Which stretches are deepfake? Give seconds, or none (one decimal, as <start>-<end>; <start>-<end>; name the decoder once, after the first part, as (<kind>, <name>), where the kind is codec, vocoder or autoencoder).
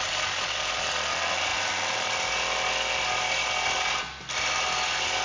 none